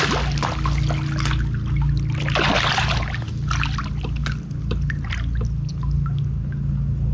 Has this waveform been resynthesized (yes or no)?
no